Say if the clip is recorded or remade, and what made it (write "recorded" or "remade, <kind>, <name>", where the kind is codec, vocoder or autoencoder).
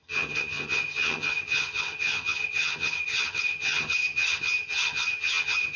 remade, vocoder, HiFi-GAN